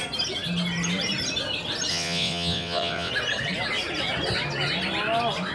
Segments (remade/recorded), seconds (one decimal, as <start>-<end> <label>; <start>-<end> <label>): 0.0-1.9 recorded; 1.9-3.1 remade; 3.1-5.5 recorded